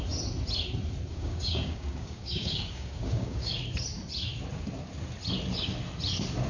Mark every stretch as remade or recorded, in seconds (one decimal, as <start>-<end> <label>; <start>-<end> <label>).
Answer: 0.0-1.1 recorded; 1.1-3.5 remade; 3.5-6.5 recorded